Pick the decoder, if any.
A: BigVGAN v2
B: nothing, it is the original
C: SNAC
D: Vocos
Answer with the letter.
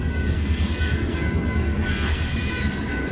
C